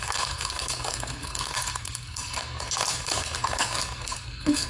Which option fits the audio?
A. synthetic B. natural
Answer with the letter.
A